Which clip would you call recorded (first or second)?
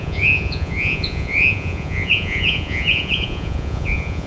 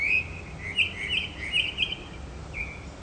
second